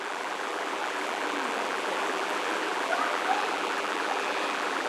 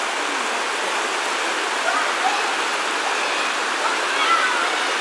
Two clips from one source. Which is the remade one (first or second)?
first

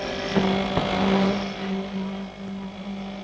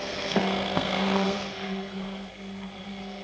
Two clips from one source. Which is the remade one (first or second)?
second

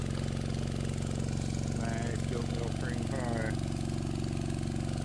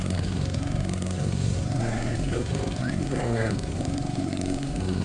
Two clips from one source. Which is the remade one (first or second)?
second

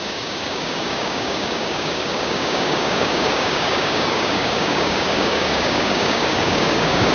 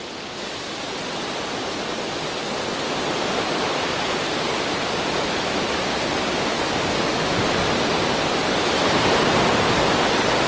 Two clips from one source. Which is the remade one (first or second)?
first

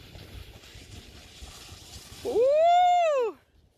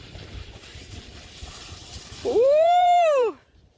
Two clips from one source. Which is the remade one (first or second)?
second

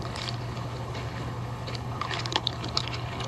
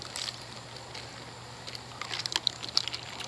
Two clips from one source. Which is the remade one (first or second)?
first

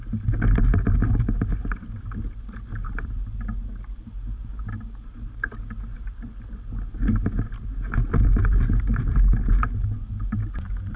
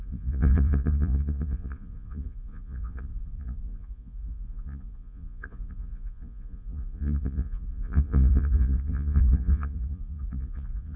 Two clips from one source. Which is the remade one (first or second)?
second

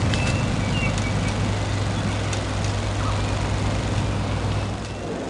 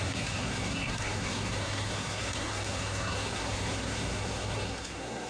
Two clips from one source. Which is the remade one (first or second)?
second